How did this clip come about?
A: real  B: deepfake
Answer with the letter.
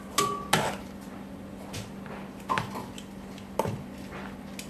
A